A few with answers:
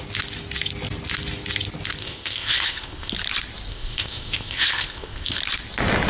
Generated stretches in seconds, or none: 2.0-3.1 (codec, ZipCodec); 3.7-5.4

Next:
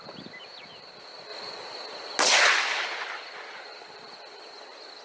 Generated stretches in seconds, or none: none